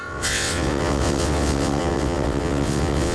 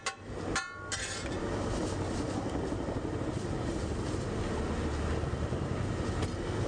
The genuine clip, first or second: second